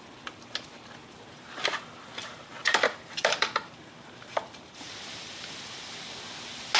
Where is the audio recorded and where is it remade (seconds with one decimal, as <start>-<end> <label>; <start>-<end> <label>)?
0.0-1.0 recorded; 1.0-1.7 remade; 1.7-2.2 recorded; 2.2-6.0 remade; 6.0-6.8 recorded